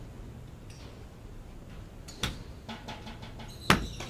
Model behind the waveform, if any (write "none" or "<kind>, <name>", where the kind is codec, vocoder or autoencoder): none